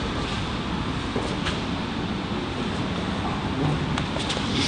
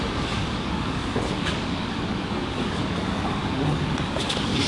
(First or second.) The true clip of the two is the first